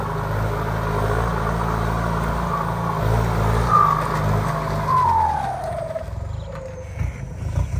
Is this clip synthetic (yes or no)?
no